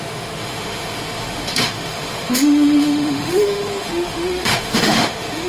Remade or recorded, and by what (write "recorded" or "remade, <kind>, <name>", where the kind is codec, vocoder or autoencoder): remade, autoencoder, DAC-VAE